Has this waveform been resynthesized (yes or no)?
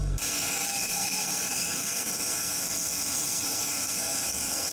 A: yes